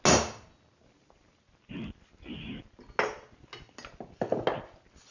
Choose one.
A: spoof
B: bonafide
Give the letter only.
B